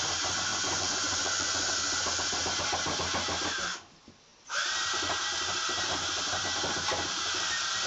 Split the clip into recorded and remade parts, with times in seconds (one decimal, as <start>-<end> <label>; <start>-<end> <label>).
0.0-0.5 recorded; 0.5-1.7 remade; 1.7-7.9 recorded